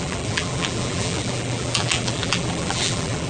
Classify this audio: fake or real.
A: fake